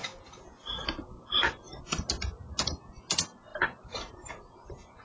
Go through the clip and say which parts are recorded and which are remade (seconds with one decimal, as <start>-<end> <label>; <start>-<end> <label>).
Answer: 0.0-5.0 recorded